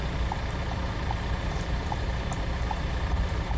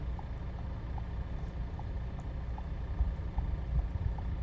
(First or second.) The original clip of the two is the second